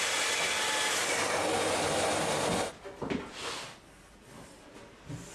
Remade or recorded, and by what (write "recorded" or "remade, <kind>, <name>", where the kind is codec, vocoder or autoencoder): recorded